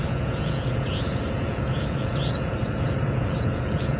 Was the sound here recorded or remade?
remade